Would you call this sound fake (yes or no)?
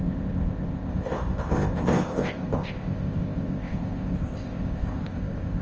yes